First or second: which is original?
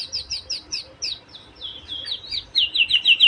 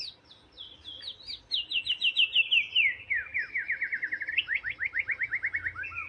second